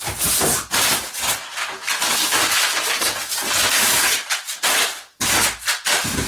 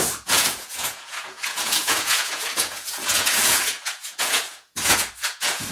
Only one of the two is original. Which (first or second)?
first